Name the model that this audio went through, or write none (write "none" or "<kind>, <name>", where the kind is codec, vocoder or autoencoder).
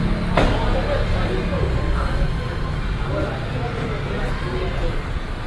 none